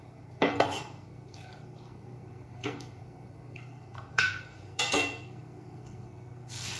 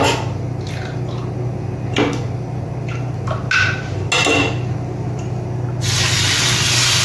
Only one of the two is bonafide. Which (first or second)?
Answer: second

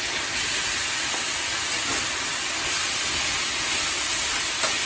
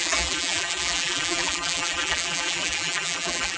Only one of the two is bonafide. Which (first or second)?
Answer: first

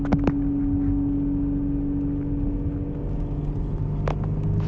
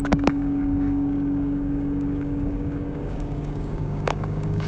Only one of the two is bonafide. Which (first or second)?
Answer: first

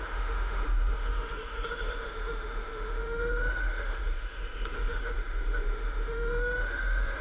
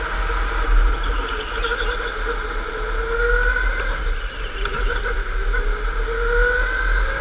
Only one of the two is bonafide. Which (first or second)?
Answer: second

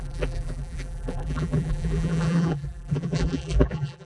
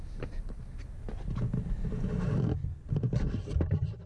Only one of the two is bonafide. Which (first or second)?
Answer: second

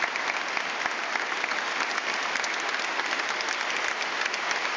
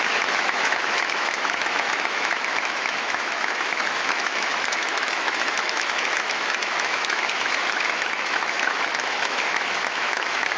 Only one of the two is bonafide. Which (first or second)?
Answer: first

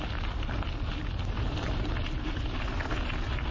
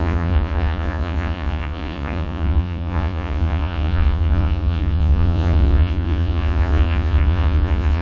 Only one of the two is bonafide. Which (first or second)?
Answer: first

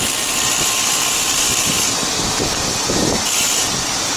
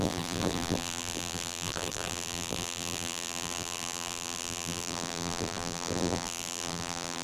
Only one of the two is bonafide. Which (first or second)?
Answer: first